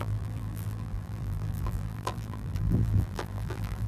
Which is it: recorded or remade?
remade